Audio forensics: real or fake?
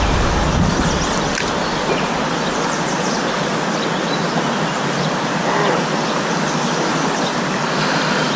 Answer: real